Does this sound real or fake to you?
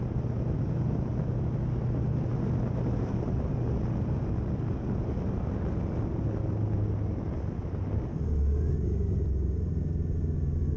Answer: real